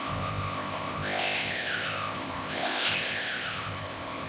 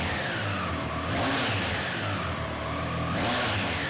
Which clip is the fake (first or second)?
first